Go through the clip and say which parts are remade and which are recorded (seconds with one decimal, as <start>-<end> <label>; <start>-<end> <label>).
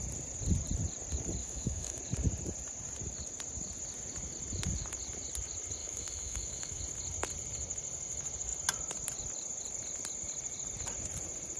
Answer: 0.0-1.4 recorded; 1.4-2.0 remade; 2.0-5.8 recorded; 5.8-6.8 remade; 6.8-11.6 recorded